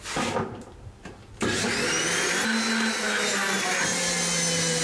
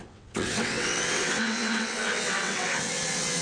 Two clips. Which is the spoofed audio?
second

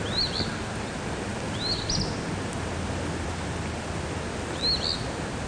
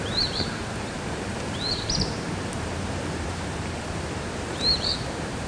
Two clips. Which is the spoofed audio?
second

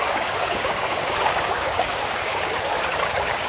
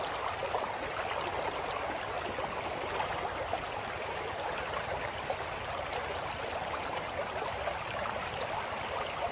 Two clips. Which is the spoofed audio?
first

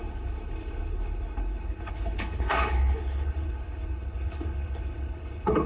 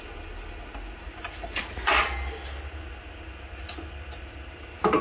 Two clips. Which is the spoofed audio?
first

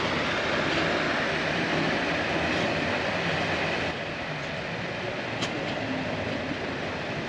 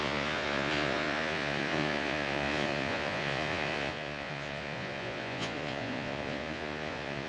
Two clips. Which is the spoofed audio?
second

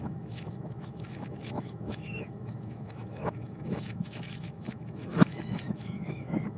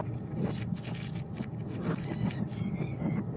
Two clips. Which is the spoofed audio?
first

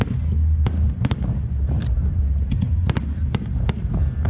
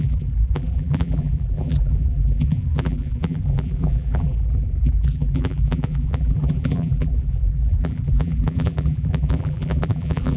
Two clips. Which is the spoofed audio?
second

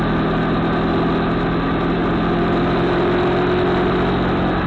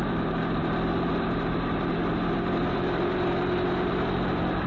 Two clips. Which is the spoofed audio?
second